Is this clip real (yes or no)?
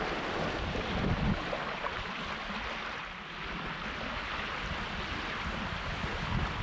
yes